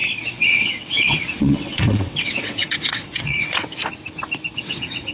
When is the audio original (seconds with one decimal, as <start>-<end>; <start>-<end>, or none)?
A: 3.6-4.6